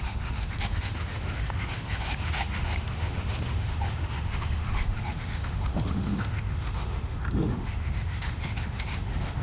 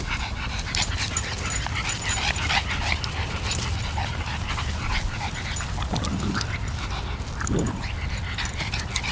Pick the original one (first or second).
second